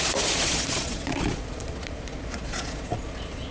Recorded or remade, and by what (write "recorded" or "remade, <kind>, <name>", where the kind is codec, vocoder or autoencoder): remade, vocoder, Vocos